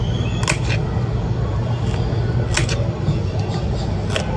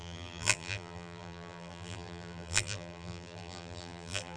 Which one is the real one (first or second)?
first